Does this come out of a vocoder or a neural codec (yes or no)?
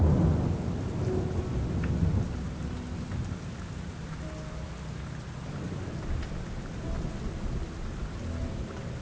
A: no